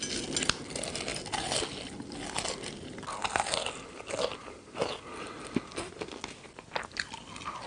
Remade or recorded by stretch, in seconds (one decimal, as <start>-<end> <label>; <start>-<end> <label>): 0.0-7.7 recorded